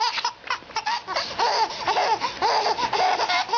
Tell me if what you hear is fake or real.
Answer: real